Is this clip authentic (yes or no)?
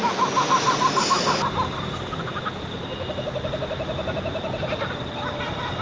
yes